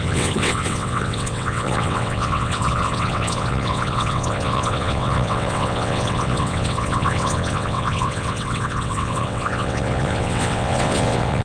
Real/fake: fake